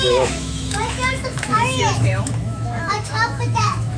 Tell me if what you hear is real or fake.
fake